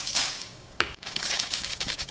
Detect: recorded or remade remade